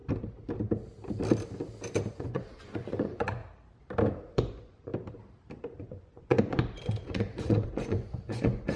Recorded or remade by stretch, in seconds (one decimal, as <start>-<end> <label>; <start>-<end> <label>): 0.0-2.1 recorded; 2.1-3.4 remade; 3.4-4.3 recorded; 4.3-4.9 remade; 4.9-5.8 recorded; 5.8-8.8 remade